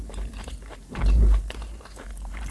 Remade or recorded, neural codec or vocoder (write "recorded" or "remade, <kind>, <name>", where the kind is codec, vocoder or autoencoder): remade, vocoder, BigVGAN v2